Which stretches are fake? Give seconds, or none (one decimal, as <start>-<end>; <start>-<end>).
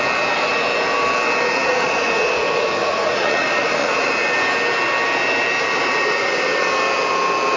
1.6-2.1; 2.8-4.1